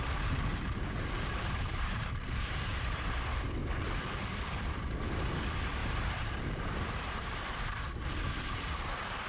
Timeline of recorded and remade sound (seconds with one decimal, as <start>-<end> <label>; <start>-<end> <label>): 0.0-0.5 recorded; 0.5-3.0 remade; 3.0-5.8 recorded; 5.8-8.1 remade; 8.1-9.3 recorded